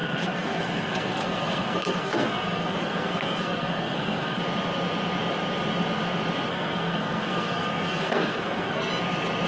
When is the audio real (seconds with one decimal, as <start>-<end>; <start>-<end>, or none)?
4.4-6.5; 8.9-9.5